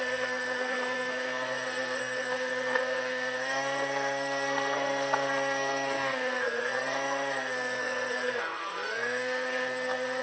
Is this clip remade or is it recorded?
remade